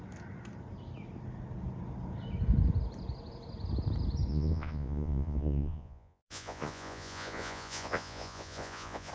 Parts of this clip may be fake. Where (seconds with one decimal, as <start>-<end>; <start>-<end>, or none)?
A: 4.3-9.1